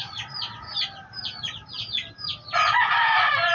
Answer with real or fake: real